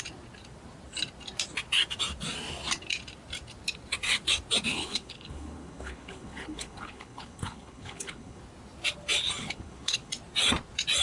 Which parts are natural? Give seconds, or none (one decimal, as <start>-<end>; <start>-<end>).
0.0-4.7; 8.4-9.4; 10.1-11.0